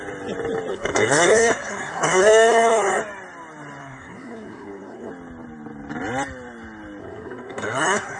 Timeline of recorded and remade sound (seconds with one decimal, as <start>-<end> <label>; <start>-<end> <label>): 0.0-0.7 recorded; 0.7-3.0 remade; 3.0-3.8 recorded; 3.8-5.1 remade; 5.1-7.0 recorded; 7.0-8.2 remade